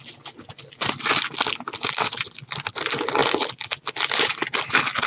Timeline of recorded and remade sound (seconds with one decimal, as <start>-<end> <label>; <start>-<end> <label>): 0.0-5.1 recorded